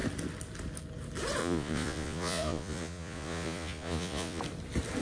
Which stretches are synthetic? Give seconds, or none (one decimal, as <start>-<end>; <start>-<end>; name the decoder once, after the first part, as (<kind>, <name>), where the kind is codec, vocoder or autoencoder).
1.4-4.4 (vocoder, Vocos)